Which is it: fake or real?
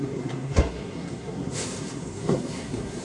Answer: fake